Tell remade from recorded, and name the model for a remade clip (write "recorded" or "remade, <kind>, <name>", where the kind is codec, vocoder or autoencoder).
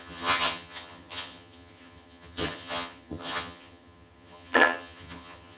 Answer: remade, vocoder, HiFi-GAN